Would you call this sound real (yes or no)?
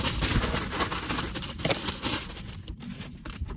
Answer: yes